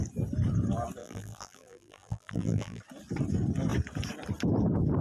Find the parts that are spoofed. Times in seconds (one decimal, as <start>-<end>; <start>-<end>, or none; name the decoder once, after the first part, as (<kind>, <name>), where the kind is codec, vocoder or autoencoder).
1.0-2.8 (vocoder, BigVGAN v2)